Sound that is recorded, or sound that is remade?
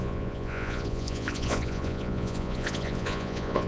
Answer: remade